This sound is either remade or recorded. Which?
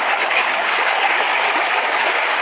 remade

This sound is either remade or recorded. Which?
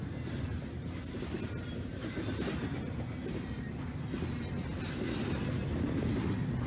recorded